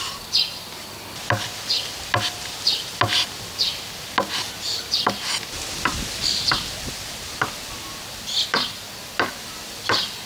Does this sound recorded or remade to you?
recorded